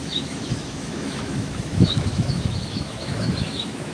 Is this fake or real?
fake